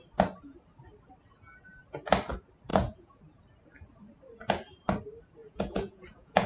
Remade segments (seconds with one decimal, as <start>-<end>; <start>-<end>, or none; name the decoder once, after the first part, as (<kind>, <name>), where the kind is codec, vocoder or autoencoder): 2.7-3.2 (vocoder, Vocos); 5.4-6.5